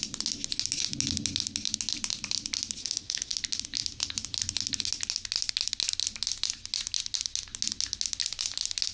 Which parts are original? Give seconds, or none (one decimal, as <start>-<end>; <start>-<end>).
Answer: 0.0-2.8; 3.3-8.9